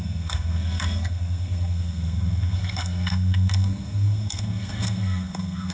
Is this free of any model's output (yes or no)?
no